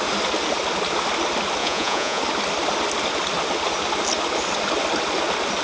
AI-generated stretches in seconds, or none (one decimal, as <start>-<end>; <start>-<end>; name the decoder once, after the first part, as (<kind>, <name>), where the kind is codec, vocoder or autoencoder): 1.6-2.2 (vocoder, Vocos)